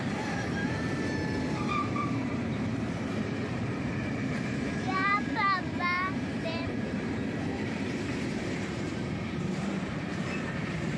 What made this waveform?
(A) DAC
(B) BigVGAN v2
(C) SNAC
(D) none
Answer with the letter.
B